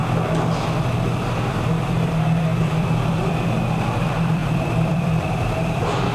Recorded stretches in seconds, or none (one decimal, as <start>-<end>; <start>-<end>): 0.0-0.8